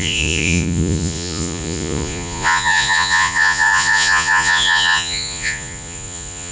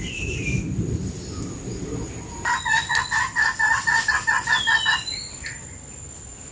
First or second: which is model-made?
first